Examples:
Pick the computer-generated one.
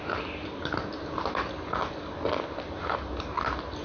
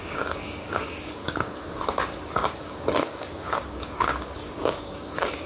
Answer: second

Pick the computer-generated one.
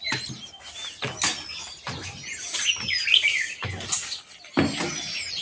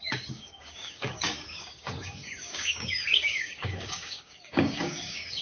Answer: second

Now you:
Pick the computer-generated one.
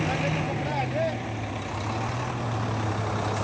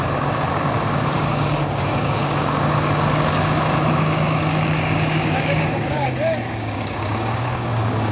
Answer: second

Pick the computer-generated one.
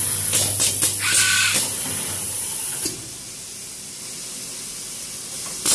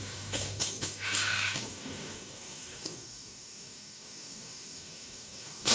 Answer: second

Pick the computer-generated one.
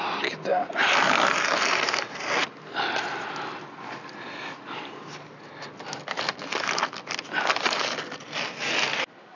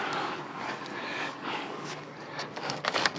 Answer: second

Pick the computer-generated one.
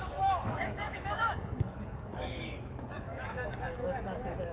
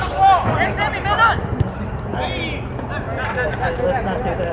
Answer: first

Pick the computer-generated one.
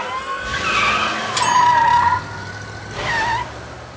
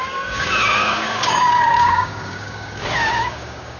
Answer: second